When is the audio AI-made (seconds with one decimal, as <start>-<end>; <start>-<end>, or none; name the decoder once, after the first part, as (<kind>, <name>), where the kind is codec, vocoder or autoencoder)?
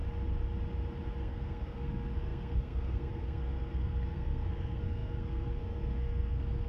1.2-6.7 (codec, SNAC)